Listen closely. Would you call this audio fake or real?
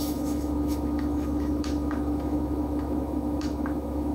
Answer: fake